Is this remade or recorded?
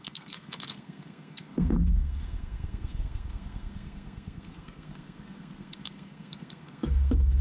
remade